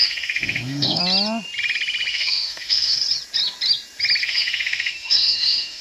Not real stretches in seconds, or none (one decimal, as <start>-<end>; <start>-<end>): 0.0-1.0; 2.1-3.0; 4.2-5.8